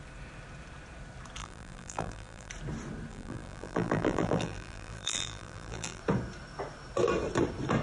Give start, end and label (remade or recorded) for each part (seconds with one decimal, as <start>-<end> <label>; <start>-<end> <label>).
0.0-1.4 recorded; 1.4-2.5 remade; 2.5-3.1 recorded; 3.1-6.0 remade; 6.0-7.8 recorded